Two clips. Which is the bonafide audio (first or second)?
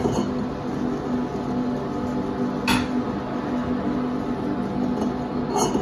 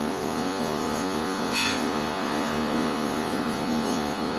first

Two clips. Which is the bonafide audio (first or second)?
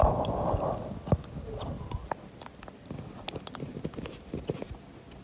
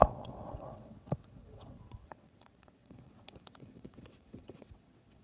first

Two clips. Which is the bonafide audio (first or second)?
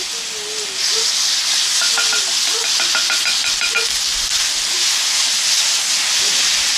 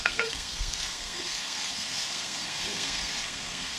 first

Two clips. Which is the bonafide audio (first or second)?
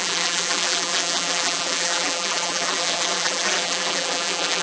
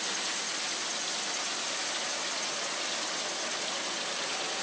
second